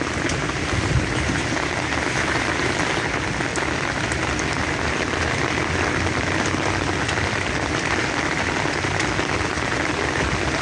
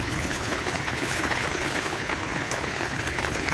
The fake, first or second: second